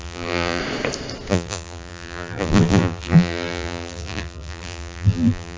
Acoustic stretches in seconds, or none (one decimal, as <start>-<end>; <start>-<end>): 0.6-1.3

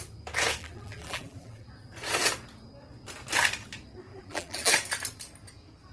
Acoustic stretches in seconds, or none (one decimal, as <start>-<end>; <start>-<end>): 0.0-0.6; 1.7-4.1; 4.7-5.9

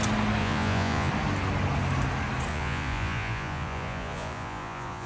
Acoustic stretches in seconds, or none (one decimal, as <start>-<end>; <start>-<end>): 0.0-0.4; 1.1-2.5

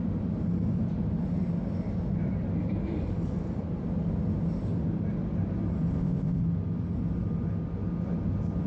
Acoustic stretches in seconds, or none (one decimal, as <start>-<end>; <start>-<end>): 0.0-5.9; 6.4-8.7

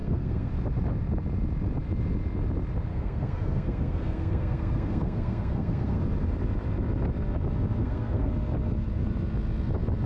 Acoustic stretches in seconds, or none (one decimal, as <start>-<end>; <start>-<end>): 0.5-2.9; 6.0-7.8; 8.3-10.1

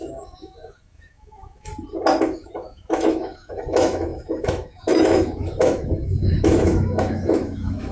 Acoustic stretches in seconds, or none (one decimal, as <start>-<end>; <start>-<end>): 1.7-2.2

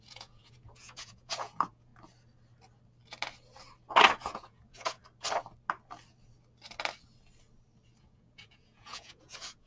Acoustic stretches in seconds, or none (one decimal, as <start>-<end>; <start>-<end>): 1.9-4.2; 5.0-8.0